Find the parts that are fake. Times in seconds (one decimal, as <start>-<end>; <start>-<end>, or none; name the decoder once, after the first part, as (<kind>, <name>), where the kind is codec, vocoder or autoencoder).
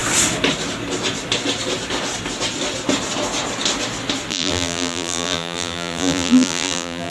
4.3-7.1 (vocoder, BigVGAN v2)